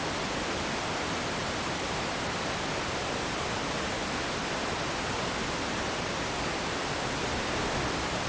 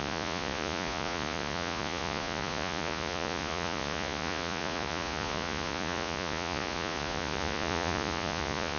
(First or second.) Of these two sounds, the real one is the first